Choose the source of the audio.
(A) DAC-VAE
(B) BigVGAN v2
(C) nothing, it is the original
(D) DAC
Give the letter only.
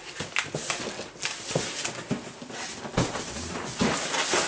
C